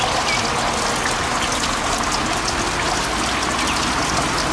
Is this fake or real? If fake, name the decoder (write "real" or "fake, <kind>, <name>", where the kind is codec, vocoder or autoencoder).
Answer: real